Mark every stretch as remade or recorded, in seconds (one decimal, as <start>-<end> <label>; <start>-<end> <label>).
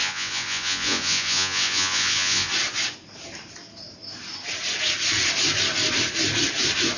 0.0-2.5 remade; 2.5-7.0 recorded